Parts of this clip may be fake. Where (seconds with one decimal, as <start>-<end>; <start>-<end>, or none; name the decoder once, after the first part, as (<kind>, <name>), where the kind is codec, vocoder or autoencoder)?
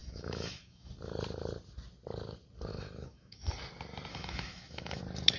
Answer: 0.0-0.9 (autoencoder, DAC-VAE); 2.7-3.5; 4.1-5.0